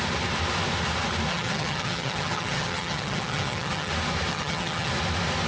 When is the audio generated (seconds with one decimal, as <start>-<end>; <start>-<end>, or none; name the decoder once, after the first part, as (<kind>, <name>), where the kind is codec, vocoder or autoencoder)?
1.3-3.9 (vocoder, HiFi-GAN); 4.3-4.9

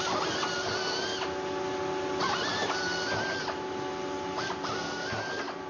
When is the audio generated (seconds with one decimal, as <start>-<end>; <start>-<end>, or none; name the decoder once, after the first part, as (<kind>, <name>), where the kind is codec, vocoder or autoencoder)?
none

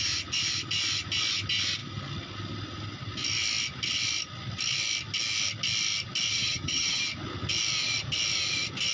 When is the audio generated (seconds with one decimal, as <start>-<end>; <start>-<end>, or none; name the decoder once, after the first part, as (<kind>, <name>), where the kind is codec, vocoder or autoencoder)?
6.3-7.0 (vocoder, HiFi-GAN)

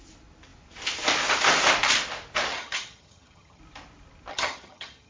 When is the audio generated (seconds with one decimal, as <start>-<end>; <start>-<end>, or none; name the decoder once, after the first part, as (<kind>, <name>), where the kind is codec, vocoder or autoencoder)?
2.5-3.6 (vocoder, HiFi-GAN); 4.3-5.1

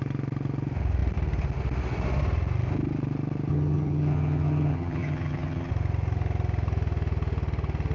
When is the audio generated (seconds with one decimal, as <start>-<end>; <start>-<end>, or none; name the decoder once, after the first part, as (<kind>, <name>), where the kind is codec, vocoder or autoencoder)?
3.5-5.7 (vocoder, HiFi-GAN)

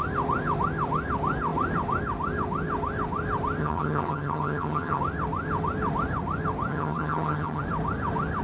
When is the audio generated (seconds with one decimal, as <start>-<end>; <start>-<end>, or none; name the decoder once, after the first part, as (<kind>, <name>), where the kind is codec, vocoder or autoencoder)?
3.6-5.0 (vocoder, HiFi-GAN); 6.7-7.6